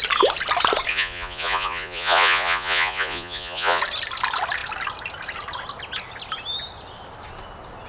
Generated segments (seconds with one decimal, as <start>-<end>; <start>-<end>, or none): 0.9-3.8